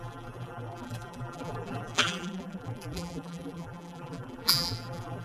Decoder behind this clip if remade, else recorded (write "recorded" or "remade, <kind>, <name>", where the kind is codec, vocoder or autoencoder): remade, vocoder, BigVGAN v2